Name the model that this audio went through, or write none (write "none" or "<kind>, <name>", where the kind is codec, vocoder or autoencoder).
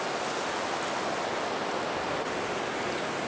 none